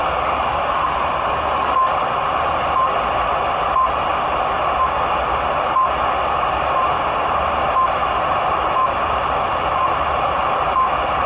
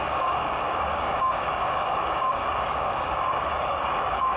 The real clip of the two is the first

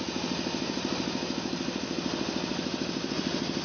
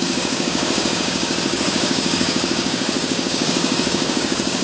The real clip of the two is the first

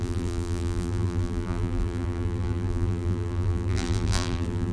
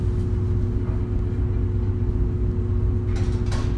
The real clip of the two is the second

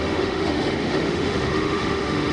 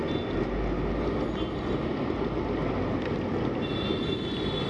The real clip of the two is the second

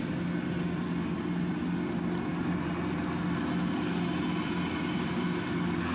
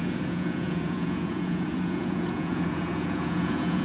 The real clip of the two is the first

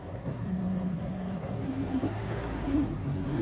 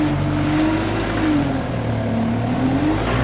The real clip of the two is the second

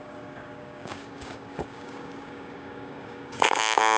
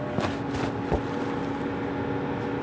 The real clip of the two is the second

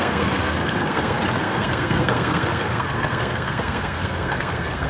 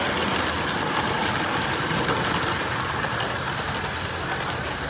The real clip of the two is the second